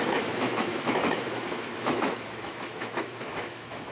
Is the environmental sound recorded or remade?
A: remade